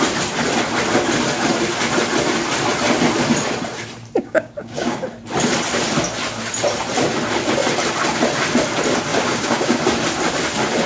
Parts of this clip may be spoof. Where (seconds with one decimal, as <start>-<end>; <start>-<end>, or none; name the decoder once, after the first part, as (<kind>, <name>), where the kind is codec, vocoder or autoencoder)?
4.2-5.0 (codec, DAC); 9.1-9.8